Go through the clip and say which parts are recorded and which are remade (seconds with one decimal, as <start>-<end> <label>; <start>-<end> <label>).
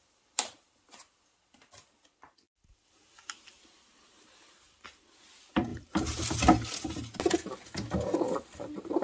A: 0.0-5.7 recorded; 5.7-6.2 remade; 6.2-9.0 recorded